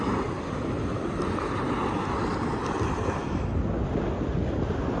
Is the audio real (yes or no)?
yes